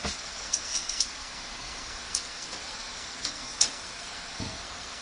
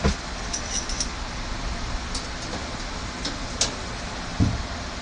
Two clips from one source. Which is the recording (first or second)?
second